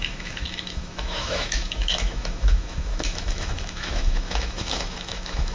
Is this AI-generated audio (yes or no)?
yes